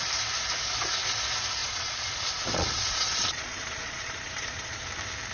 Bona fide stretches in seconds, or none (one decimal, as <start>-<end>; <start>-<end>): 0.0-1.6; 4.8-5.3